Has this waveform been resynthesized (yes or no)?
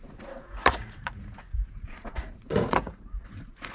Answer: yes